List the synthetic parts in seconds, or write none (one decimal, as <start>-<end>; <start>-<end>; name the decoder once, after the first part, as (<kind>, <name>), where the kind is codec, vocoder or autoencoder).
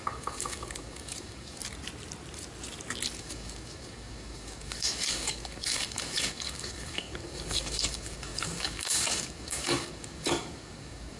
0.0-1.6 (codec, DAC); 3.2-11.2